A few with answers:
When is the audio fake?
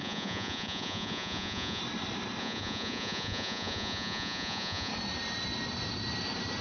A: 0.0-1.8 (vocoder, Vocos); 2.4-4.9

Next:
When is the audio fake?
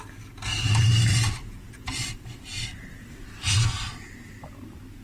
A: 1.2-3.9 (vocoder, BigVGAN v2)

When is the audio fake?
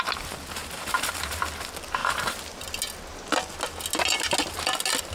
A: 0.6-1.4 (vocoder, BigVGAN v2); 2.0-2.6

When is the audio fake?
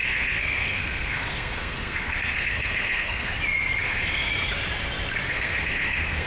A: 0.0-3.3 (codec, SNAC); 3.8-4.3; 5.3-6.3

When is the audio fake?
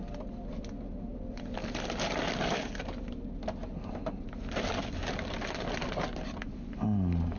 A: none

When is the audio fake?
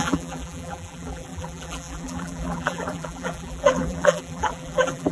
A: 0.0-5.1 (vocoder, BigVGAN v2)